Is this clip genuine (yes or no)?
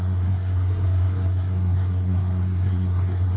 no